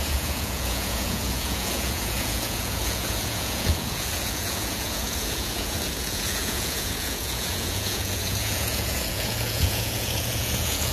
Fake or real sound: fake